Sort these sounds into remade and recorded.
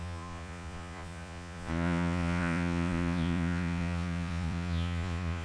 remade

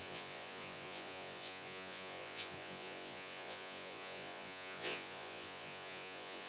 remade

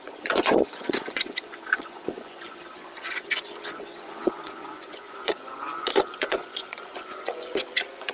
remade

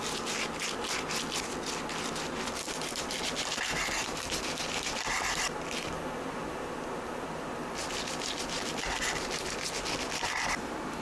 recorded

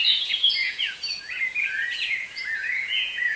remade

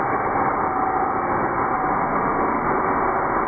recorded